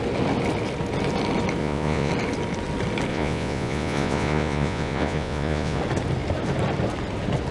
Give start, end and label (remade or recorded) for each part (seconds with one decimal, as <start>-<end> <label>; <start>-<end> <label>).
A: 0.0-1.6 recorded; 1.6-2.1 remade; 2.1-3.1 recorded; 3.1-5.8 remade; 5.8-7.5 recorded